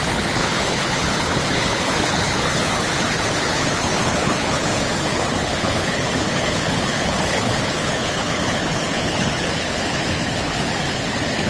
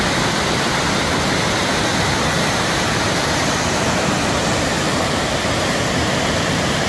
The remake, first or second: first